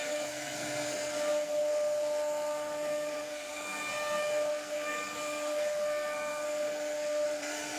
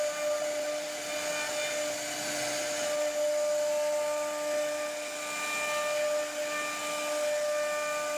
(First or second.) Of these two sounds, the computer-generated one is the first